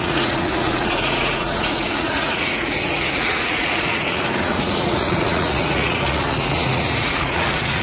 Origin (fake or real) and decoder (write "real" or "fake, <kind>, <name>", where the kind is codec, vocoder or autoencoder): fake, vocoder, Vocos